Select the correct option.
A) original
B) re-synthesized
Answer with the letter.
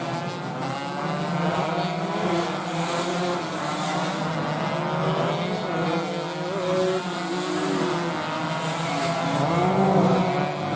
A